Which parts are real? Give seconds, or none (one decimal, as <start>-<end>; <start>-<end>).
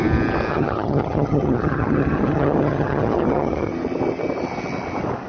0.0-0.5; 3.7-5.3